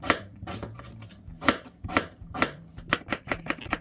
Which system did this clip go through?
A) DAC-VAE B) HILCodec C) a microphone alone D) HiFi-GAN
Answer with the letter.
C